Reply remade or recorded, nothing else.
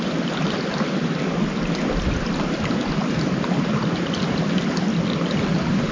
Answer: recorded